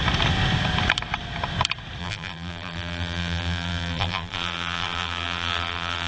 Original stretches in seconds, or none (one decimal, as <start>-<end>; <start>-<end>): 0.0-2.0